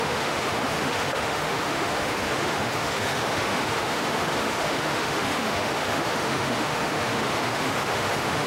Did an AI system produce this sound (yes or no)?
yes